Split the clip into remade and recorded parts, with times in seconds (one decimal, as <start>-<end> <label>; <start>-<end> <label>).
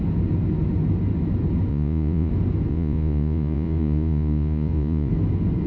0.0-1.7 recorded; 1.7-2.3 remade; 2.3-2.7 recorded; 2.7-5.1 remade; 5.1-5.7 recorded